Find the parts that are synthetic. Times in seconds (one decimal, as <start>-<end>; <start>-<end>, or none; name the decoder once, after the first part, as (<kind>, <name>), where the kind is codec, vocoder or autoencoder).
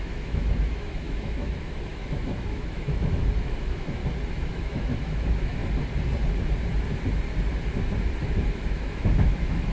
0.0-4.0 (autoencoder, DAC-VAE); 4.5-5.6; 8.5-9.7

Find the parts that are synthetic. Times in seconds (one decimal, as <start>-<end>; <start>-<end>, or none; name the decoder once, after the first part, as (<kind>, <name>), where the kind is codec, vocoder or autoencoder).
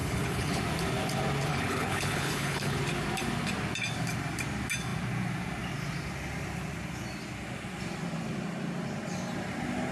0.0-0.6 (codec, HILCodec); 1.5-2.8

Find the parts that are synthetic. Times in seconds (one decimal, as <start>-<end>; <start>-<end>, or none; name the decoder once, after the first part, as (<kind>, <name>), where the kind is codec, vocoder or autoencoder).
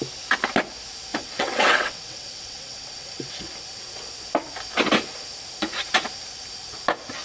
1.1-3.4 (vocoder, WaveNeXt)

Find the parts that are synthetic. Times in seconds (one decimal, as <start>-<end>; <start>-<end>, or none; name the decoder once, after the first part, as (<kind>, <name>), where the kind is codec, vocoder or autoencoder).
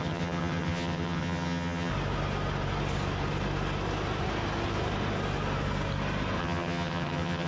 0.0-1.9 (vocoder, HiFi-GAN); 6.4-7.5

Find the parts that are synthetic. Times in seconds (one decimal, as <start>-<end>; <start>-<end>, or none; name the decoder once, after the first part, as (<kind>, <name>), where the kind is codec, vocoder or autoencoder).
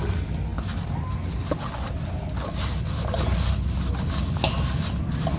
none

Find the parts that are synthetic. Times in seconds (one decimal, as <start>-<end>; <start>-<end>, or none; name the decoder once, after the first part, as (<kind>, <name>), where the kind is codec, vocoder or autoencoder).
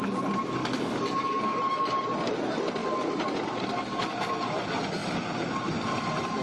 0.6-1.6 (codec, DAC)